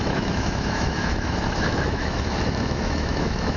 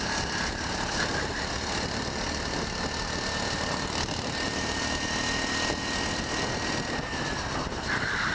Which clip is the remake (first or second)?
first